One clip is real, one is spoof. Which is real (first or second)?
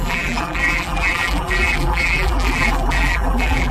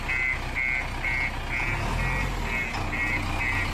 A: second